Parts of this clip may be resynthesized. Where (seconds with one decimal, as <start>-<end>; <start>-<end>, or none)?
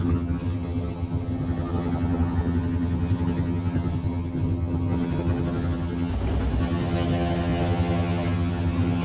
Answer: 0.0-6.1; 6.6-9.0